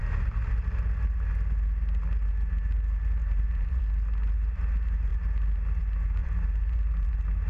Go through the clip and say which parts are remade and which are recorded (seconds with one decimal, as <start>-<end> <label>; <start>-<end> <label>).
0.0-3.2 recorded; 3.2-3.8 remade; 3.8-6.2 recorded; 6.2-7.1 remade; 7.1-7.5 recorded